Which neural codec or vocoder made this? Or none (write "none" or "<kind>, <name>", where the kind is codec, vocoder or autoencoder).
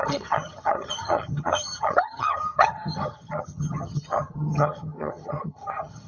vocoder, HiFi-GAN